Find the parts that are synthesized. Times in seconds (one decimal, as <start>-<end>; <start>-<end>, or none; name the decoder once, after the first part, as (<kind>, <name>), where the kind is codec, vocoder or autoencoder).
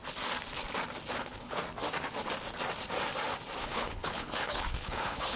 1.2-1.6 (codec, HILCodec); 3.6-5.4